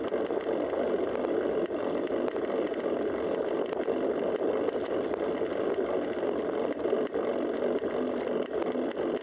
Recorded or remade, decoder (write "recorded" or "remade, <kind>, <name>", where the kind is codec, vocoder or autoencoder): recorded